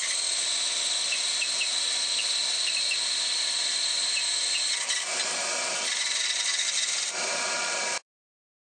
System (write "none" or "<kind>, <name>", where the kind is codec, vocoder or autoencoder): none